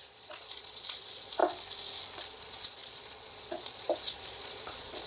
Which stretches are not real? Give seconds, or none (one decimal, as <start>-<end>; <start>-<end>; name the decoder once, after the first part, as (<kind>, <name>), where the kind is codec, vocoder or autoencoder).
0.0-1.4 (vocoder, Vocos); 2.2-5.1